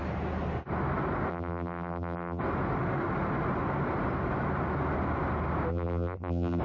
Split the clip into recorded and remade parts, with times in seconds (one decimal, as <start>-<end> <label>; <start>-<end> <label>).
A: 0.0-1.3 recorded; 1.3-2.4 remade; 2.4-5.7 recorded; 5.7-6.6 remade